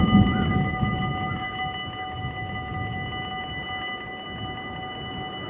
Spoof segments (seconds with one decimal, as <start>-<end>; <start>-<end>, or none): none